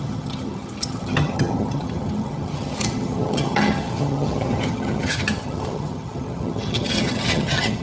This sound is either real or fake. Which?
fake